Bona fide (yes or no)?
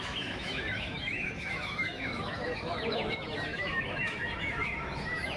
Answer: no